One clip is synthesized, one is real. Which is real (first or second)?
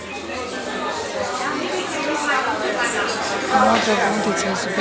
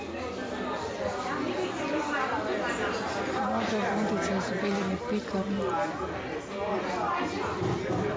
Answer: first